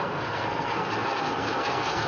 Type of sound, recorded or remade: remade